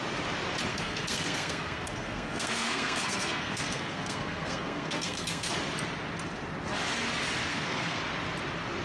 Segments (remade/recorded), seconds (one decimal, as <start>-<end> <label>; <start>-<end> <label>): 0.0-0.7 recorded; 0.7-5.5 remade; 5.5-7.5 recorded; 7.5-8.0 remade; 8.0-8.8 recorded